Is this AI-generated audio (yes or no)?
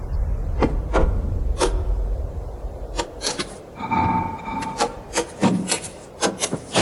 yes